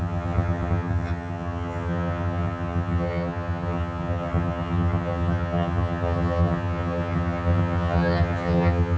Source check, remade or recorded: remade